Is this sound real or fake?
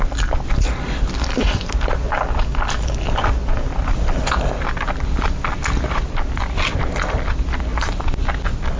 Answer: real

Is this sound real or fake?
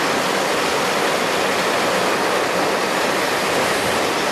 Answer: real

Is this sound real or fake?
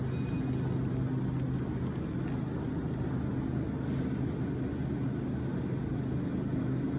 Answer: real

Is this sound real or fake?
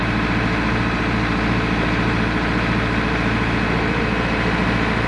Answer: real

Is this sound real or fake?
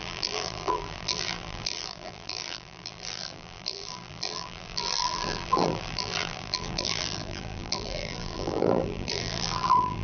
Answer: fake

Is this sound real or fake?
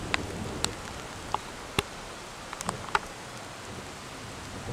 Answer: real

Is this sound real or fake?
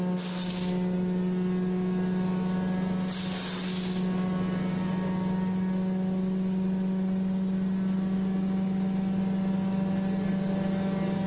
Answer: real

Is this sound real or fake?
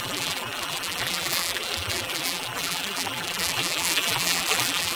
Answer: fake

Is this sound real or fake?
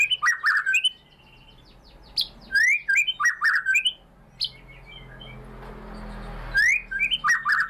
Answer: real